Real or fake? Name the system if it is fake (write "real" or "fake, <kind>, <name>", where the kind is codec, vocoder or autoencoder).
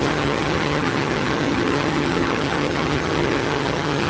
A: fake, vocoder, HiFi-GAN